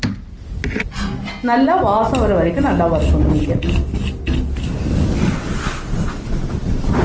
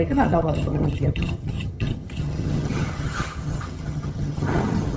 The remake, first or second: second